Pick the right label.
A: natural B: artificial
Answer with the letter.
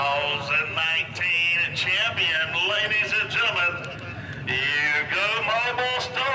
A